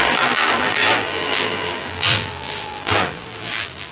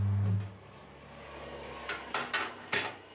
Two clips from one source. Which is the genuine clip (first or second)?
second